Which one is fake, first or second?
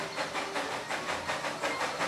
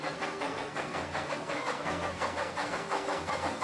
second